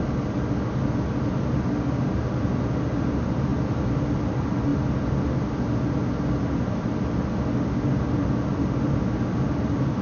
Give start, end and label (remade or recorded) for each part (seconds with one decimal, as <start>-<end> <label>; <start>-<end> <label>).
0.0-10.0 recorded